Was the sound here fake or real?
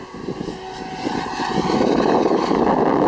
real